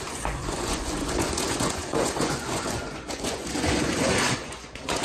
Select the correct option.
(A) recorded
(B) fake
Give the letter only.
B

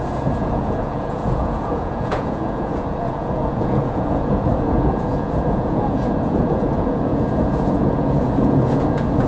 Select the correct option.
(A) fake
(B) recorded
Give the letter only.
A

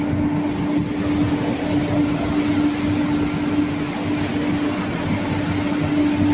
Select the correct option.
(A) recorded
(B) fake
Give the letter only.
A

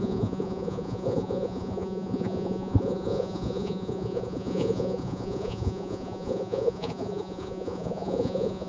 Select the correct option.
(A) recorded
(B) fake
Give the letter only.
B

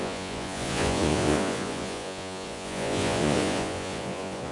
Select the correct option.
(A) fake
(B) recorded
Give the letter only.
A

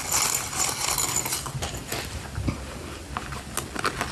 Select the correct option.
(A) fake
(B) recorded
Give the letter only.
B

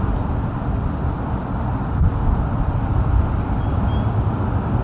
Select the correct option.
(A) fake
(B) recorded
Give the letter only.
B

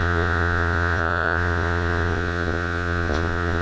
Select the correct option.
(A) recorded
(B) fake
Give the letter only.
B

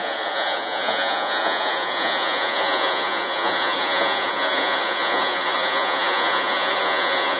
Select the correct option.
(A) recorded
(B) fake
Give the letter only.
B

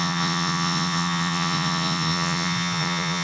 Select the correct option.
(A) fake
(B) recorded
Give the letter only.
A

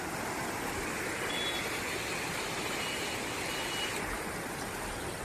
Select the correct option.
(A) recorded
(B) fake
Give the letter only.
A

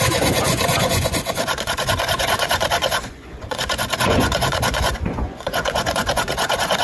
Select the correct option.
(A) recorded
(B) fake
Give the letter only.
B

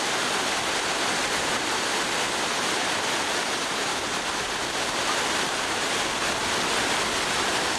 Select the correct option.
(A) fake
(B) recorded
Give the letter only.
B